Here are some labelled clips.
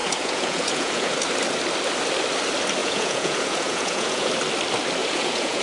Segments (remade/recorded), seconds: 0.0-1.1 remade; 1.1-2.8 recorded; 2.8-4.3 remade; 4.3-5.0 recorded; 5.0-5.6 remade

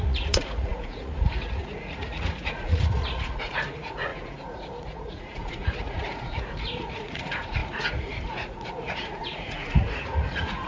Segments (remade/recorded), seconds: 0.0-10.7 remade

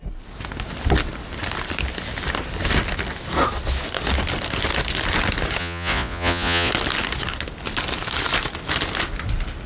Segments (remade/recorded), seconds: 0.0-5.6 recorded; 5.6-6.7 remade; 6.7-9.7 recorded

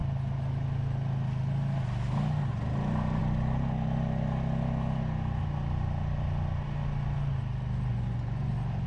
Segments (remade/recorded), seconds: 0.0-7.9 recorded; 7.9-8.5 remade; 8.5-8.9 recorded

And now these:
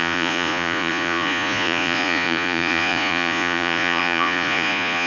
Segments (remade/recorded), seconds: 0.0-5.1 remade